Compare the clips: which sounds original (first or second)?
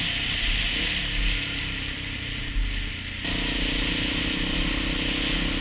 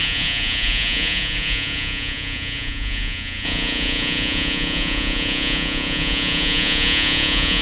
first